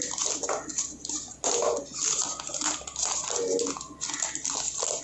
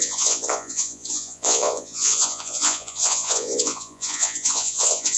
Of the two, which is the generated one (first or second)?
second